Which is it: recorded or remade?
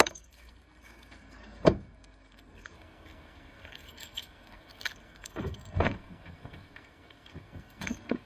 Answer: remade